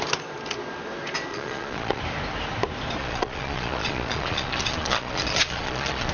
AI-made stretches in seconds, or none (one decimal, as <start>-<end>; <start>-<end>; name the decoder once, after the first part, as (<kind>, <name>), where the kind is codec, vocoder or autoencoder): 1.3-2.0 (vocoder, Vocos); 3.0-6.1